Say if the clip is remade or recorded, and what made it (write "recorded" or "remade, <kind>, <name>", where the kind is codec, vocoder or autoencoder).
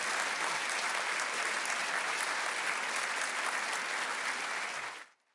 recorded